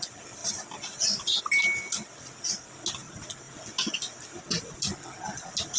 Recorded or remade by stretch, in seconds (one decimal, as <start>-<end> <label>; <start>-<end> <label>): 0.0-5.8 recorded